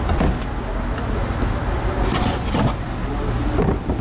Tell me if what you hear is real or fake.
real